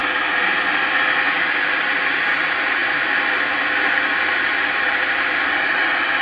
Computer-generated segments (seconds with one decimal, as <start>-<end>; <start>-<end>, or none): none